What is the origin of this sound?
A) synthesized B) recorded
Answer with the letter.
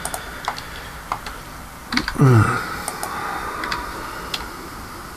B